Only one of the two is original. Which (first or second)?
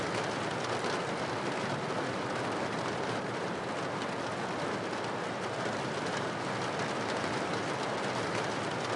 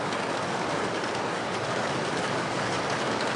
first